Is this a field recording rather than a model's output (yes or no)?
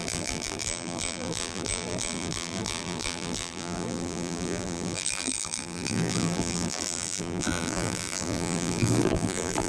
no